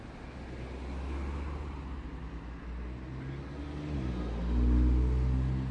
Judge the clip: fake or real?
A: real